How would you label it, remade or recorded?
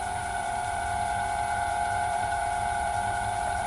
remade